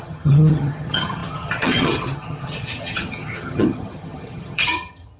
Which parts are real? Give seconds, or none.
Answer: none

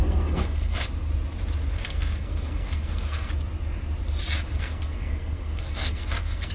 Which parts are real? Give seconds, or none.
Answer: 0.9-1.7; 3.3-4.5

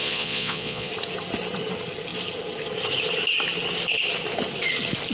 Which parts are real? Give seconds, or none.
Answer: 0.9-5.1